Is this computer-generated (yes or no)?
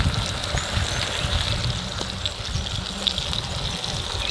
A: no